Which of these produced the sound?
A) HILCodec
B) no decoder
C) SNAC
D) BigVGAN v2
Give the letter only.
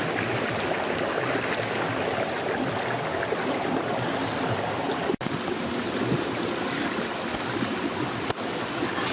B